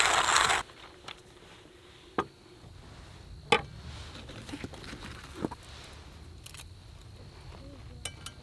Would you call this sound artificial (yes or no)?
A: no